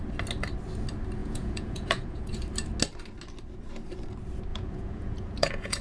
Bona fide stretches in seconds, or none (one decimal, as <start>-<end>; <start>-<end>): 0.0-1.2; 2.3-4.5